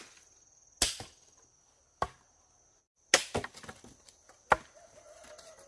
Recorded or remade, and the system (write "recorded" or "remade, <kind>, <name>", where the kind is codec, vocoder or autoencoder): recorded